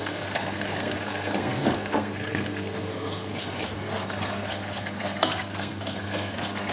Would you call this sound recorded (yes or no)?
no